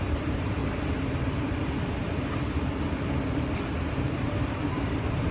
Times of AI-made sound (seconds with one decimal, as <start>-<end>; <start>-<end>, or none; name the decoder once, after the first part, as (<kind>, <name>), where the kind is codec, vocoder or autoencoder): 0.0-0.6 (vocoder, BigVGAN v2); 3.8-5.3